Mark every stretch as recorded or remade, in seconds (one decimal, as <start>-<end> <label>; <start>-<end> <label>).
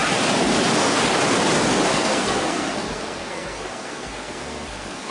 0.0-1.9 recorded; 1.9-5.1 remade